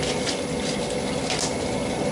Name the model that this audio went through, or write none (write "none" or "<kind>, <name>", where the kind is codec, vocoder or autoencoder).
none